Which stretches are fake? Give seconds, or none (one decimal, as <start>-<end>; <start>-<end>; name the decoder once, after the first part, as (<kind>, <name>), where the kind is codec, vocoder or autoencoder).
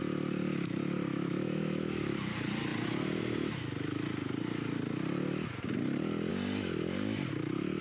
1.1-2.1 (autoencoder, DAC-VAE)